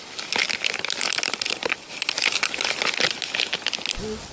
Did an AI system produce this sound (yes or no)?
no